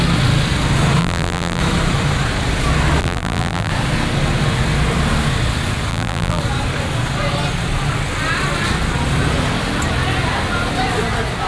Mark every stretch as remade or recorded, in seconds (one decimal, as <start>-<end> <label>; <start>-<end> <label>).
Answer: 0.0-1.0 recorded; 1.0-1.6 remade; 1.6-3.0 recorded; 3.0-3.7 remade; 3.7-5.9 recorded; 5.9-6.4 remade; 6.4-11.5 recorded